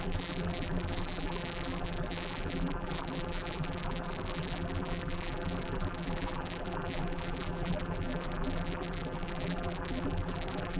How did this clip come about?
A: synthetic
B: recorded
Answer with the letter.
A